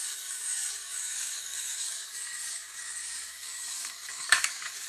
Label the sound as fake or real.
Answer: fake